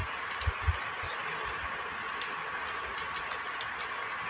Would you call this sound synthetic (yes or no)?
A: no